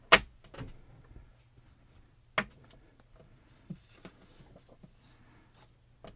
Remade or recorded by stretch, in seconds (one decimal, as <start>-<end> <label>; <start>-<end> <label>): 0.0-6.2 recorded

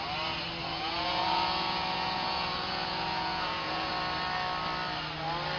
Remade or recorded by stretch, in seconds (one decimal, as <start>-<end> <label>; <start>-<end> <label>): 0.0-0.6 recorded; 0.6-3.9 remade; 3.9-5.6 recorded

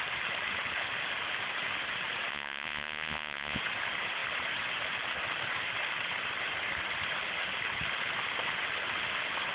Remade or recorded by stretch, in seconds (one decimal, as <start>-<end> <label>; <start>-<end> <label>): 0.0-2.3 recorded; 2.3-3.6 remade; 3.6-9.5 recorded

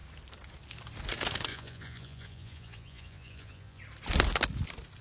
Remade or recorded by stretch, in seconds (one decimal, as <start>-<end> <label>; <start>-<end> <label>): 0.0-1.5 recorded; 1.5-3.8 remade; 3.8-5.0 recorded

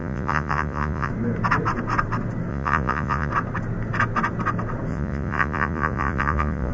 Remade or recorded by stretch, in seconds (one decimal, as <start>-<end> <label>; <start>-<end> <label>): 0.0-1.1 remade; 1.1-2.5 recorded; 2.5-3.3 remade; 3.3-4.9 recorded; 4.9-6.7 remade

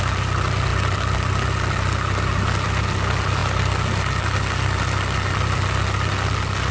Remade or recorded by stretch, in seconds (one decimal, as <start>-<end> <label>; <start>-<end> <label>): 0.0-6.7 recorded

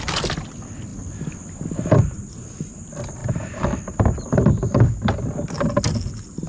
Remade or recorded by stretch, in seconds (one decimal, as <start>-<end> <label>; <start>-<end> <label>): 0.0-6.5 recorded

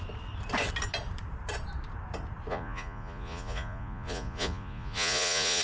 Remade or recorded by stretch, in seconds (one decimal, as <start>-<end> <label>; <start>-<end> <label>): 0.0-2.5 recorded; 2.5-5.6 remade